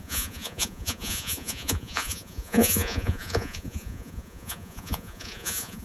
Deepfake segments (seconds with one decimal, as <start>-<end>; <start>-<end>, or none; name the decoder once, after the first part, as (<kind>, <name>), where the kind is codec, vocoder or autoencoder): 0.0-5.8 (vocoder, Vocos)